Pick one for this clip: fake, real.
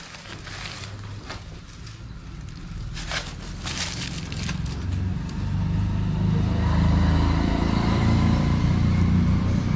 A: real